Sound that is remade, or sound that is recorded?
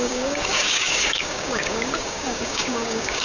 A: remade